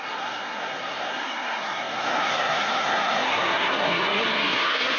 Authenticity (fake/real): fake